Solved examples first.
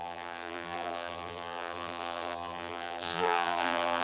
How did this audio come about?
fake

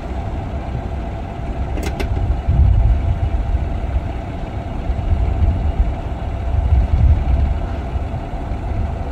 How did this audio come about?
real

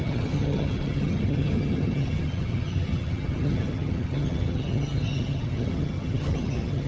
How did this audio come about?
fake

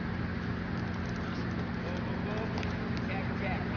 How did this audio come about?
real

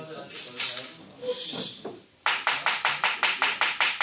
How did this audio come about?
real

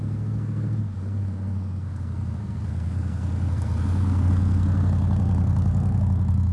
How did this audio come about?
fake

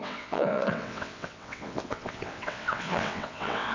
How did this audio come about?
fake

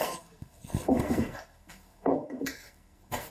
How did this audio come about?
fake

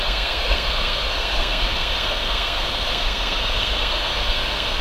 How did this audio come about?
fake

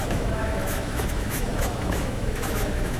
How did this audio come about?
fake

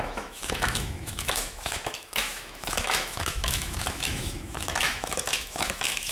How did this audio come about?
fake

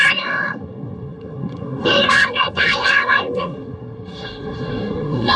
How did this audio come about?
fake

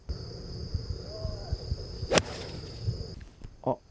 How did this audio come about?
real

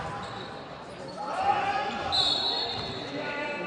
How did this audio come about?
fake